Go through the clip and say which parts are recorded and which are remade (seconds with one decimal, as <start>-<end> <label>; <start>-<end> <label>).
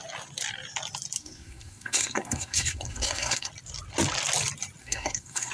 0.0-1.2 recorded; 1.2-3.5 remade; 3.5-4.8 recorded; 4.8-5.5 remade